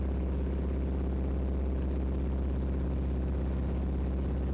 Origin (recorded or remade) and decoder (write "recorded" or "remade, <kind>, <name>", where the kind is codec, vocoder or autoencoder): recorded